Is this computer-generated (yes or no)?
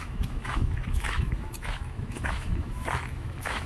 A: yes